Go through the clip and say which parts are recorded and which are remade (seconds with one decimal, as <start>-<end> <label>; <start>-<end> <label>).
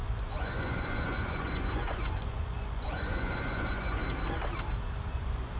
0.0-4.0 remade; 4.0-5.1 recorded; 5.1-5.6 remade